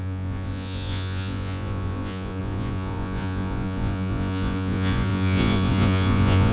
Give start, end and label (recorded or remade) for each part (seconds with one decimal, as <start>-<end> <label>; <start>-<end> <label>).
0.0-6.5 remade